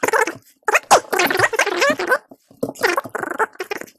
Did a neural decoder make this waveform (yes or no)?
no